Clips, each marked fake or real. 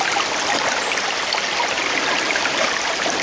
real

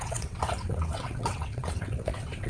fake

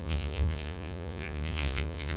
fake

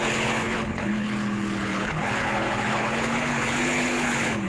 fake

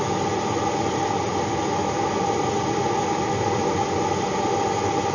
real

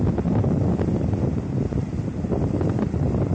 real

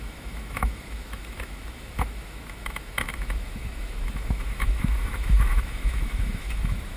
fake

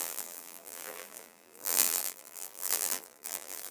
fake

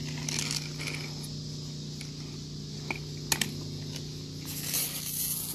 real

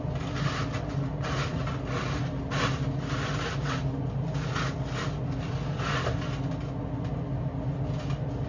real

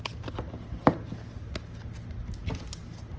real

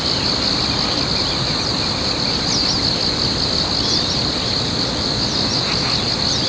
real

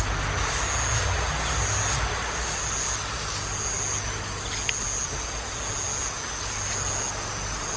real